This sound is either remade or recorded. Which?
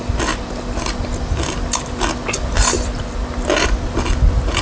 recorded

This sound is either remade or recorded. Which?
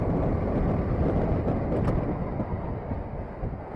recorded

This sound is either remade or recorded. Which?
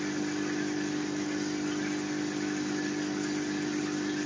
recorded